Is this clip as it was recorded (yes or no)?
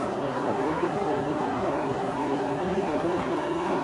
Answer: no